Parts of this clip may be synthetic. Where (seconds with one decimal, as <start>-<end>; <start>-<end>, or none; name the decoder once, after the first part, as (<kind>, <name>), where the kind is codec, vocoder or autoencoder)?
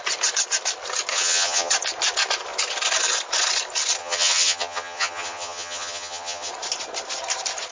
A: 1.1-1.7 (vocoder, HiFi-GAN); 4.0-6.5